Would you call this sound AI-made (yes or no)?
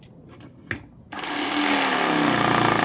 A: no